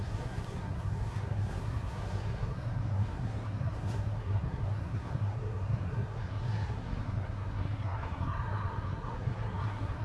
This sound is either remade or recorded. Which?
remade